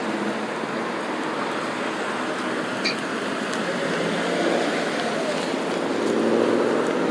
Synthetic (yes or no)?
no